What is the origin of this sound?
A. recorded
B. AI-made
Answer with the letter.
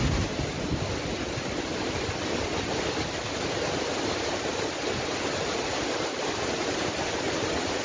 A